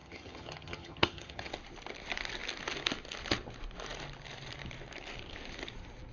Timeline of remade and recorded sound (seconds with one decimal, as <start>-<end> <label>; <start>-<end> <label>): 0.0-1.5 remade; 1.5-6.1 recorded